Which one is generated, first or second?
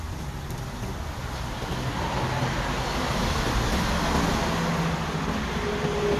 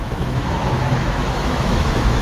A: second